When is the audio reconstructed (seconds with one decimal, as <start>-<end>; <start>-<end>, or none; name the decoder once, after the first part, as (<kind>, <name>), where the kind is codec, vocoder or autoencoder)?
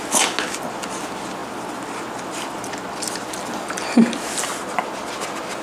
none